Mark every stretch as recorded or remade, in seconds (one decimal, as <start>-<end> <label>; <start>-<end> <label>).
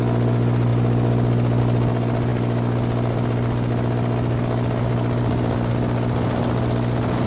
0.0-7.3 recorded